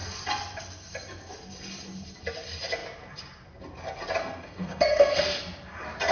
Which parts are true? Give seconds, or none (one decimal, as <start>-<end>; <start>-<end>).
0.0-4.2; 5.4-6.1